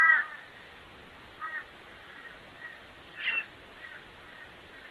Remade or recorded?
recorded